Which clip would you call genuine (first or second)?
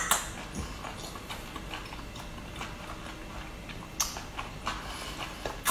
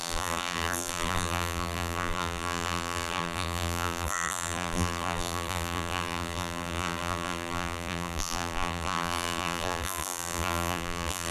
first